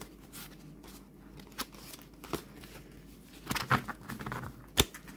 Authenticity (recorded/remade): recorded